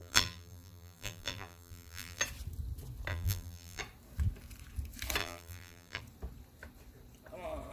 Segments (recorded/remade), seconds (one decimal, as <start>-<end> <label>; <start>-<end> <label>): 0.0-2.2 remade; 2.2-3.1 recorded; 3.1-3.8 remade; 3.8-5.2 recorded; 5.2-6.0 remade; 6.0-7.7 recorded